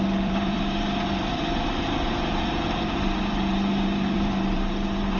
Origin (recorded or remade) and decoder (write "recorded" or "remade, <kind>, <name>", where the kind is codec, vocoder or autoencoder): remade, vocoder, BigVGAN v2